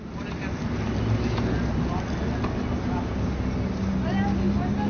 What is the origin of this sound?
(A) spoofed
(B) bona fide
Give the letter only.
B